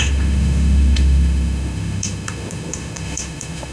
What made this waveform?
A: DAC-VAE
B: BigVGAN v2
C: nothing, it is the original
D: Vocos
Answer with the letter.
A